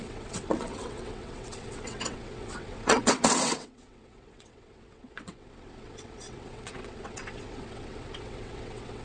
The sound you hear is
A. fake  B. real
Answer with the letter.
A